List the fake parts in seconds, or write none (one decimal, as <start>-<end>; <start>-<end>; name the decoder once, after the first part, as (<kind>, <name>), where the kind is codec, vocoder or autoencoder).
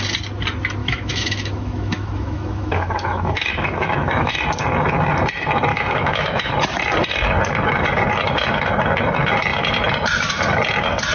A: 0.8-4.3 (autoencoder, DAC-VAE); 5.7-6.5